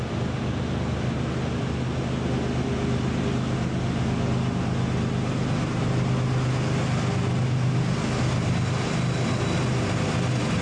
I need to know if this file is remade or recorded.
recorded